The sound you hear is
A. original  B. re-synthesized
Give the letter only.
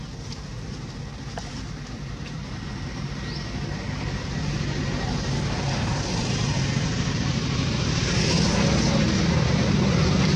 B